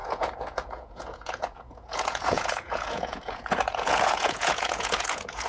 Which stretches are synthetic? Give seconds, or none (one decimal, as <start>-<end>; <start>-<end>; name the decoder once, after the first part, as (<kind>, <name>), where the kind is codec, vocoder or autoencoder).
0.0-5.5 (vocoder, Vocos)